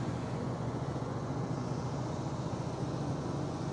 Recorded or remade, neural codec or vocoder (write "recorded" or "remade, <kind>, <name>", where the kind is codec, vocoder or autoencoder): remade, vocoder, Vocos